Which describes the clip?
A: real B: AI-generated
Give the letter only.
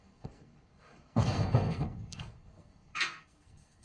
B